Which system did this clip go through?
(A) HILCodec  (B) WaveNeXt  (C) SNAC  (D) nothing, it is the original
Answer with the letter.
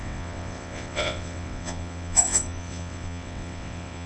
B